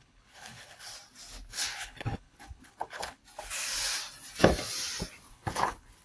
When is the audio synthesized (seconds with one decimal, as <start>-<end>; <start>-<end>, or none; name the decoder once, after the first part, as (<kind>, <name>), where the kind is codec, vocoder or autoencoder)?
0.0-0.9 (codec, HILCodec); 1.5-3.2; 5.3-6.0